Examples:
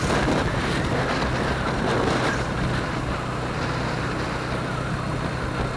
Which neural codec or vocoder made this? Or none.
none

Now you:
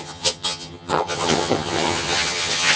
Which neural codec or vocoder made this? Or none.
vocoder, HiFi-GAN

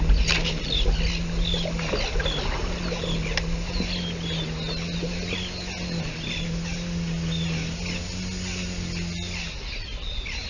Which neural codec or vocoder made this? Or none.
none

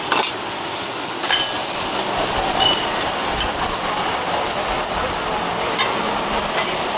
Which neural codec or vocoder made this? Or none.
none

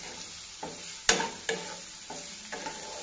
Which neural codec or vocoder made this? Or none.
none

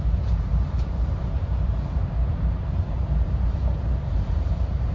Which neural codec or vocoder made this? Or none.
vocoder, BigVGAN v2